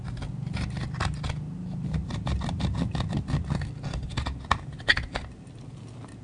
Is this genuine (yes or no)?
yes